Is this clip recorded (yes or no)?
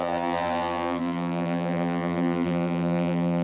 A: no